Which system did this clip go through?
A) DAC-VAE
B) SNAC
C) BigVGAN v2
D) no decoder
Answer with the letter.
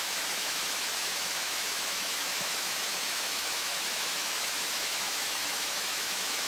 A